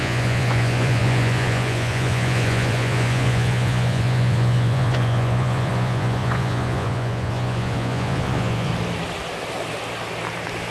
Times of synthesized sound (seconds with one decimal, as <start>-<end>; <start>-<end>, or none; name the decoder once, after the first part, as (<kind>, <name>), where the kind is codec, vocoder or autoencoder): 0.0-8.7 (vocoder, Vocos)